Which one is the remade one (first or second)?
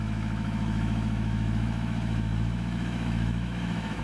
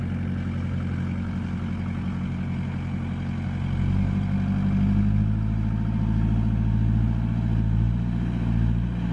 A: first